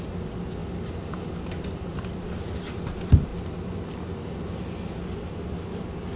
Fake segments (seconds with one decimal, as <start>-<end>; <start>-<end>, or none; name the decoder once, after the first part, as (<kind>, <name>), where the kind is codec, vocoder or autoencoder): none